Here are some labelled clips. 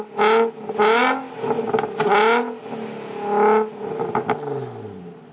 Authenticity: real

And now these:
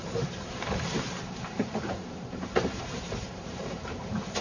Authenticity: fake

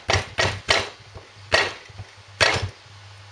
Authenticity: real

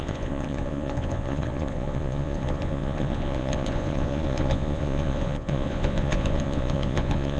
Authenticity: fake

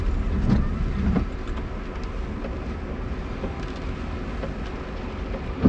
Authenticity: real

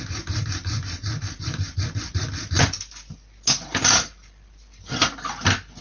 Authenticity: real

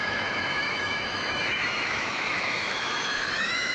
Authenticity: fake